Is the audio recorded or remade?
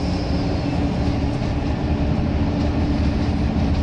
recorded